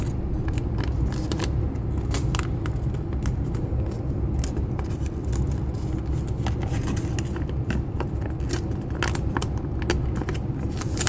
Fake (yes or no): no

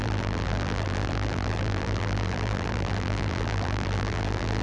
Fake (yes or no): yes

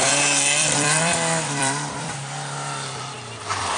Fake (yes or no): yes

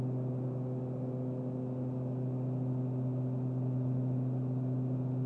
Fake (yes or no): no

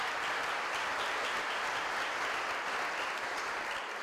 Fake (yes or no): no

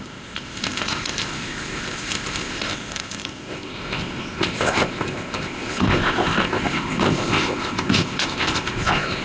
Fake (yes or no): yes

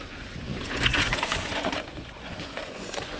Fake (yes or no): yes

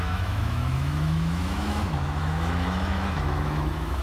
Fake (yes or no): yes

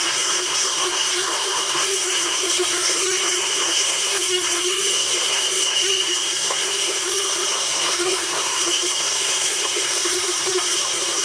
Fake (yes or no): yes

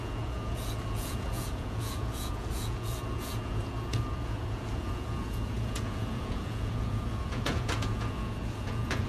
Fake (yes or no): yes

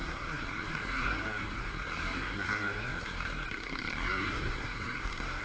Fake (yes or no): yes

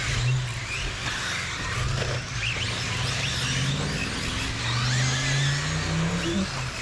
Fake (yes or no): no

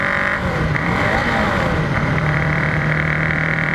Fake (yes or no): yes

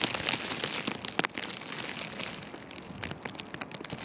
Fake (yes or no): no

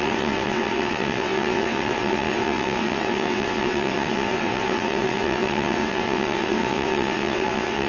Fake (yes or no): yes